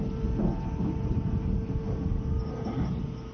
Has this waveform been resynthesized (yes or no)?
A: no